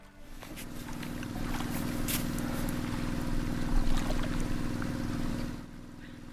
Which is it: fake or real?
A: real